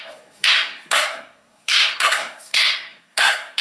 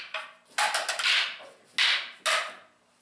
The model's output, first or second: first